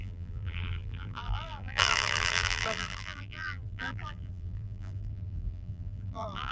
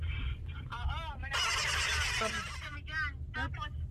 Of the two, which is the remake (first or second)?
first